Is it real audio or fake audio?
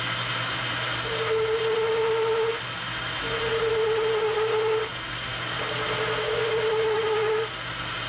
real